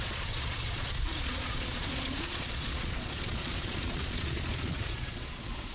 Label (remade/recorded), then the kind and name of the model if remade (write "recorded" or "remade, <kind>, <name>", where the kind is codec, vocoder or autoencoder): remade, vocoder, Vocos